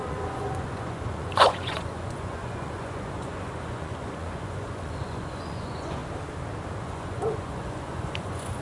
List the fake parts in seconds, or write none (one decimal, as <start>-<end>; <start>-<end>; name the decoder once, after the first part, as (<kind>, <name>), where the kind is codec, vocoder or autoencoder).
0.0-6.0 (vocoder, Vocos); 6.8-8.6